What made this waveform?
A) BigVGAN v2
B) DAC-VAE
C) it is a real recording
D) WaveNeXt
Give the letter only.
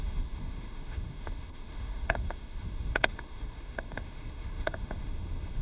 B